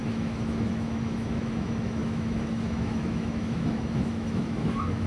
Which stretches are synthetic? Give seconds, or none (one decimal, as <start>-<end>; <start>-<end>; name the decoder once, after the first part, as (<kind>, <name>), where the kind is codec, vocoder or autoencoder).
0.0-5.1 (autoencoder, DAC-VAE)